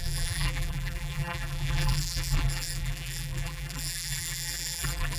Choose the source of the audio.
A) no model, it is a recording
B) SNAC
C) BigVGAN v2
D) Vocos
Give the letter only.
C